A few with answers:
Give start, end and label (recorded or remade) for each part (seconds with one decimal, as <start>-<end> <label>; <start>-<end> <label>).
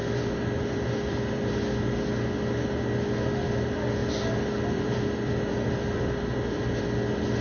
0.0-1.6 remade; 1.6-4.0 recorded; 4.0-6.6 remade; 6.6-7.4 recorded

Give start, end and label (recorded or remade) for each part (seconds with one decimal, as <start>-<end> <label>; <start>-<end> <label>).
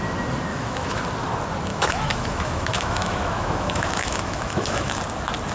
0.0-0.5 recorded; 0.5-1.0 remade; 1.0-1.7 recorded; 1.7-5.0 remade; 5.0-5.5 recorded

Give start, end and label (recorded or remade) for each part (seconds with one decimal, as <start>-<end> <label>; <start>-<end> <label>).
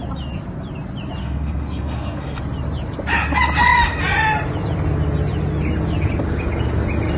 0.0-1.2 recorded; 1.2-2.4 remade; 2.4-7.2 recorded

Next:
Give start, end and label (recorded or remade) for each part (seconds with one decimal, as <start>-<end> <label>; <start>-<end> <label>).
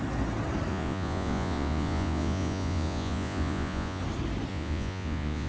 0.0-0.7 recorded; 0.7-4.0 remade; 4.0-4.5 recorded; 4.5-5.5 remade